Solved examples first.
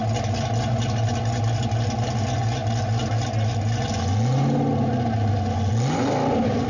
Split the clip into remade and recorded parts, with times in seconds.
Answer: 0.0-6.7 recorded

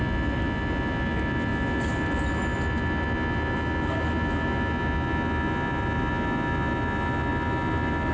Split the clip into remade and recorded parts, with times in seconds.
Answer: 0.0-8.1 recorded

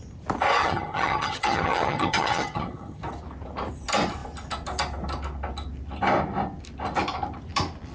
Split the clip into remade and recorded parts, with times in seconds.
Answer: 0.0-0.6 recorded; 0.6-3.0 remade; 3.0-7.9 recorded

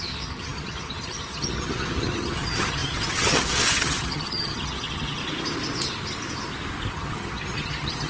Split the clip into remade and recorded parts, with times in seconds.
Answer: 0.0-5.2 remade; 5.2-6.9 recorded; 6.9-8.1 remade

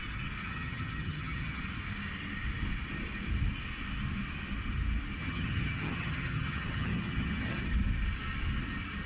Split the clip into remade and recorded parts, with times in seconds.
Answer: 0.0-0.4 recorded; 0.4-1.6 remade; 1.6-5.2 recorded; 5.2-7.6 remade; 7.6-9.1 recorded